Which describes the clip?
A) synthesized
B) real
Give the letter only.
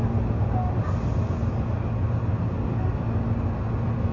B